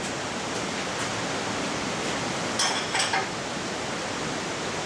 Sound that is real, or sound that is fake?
real